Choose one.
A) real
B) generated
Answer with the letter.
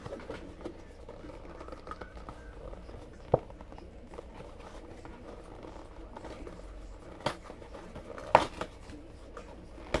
A